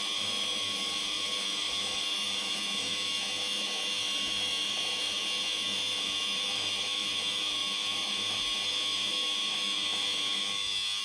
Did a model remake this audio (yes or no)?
yes